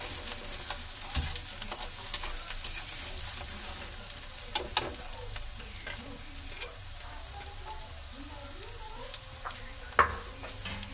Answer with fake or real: real